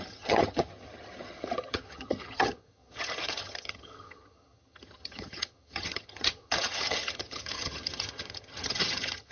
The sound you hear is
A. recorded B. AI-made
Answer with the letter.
B